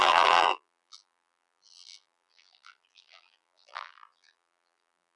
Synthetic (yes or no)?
yes